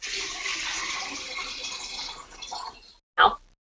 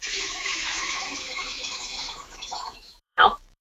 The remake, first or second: second